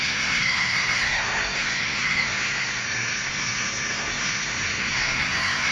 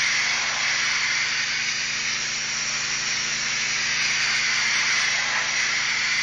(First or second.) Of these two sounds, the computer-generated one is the first